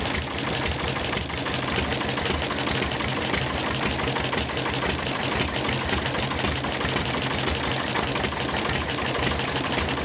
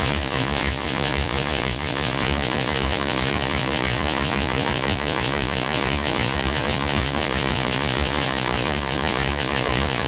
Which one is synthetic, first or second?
second